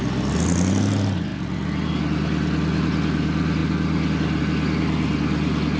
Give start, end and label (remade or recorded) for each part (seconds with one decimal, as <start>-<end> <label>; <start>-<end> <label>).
0.0-5.8 recorded